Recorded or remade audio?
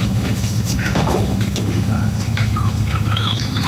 remade